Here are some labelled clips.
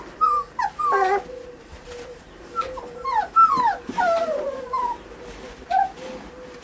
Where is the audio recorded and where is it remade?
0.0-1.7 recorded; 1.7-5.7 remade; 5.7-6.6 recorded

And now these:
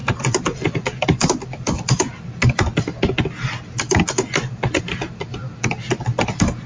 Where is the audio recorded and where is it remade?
0.0-2.3 remade; 2.3-6.7 recorded